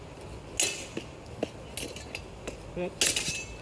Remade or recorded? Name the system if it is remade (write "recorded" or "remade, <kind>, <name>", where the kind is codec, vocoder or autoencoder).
recorded